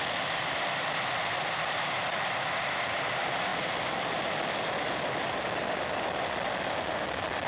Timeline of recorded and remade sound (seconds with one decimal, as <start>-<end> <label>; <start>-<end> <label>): 0.0-7.5 remade